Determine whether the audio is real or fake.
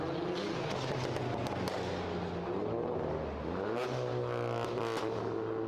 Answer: real